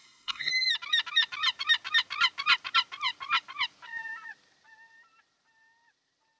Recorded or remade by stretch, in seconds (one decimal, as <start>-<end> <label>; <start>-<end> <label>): 0.0-0.5 remade; 0.5-6.4 recorded